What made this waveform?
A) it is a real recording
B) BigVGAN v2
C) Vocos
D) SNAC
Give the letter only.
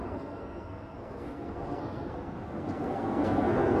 D